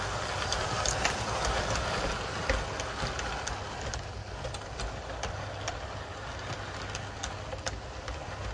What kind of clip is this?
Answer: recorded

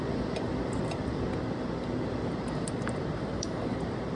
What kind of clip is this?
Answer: recorded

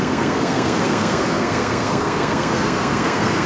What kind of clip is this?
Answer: remade